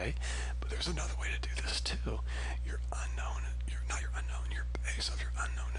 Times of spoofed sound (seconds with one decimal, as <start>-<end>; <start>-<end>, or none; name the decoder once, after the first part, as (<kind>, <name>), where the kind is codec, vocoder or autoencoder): none